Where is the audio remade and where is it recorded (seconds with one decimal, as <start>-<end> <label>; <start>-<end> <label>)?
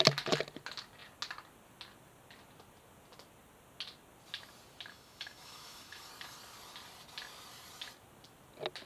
0.0-4.9 recorded; 4.9-6.1 remade; 6.1-8.9 recorded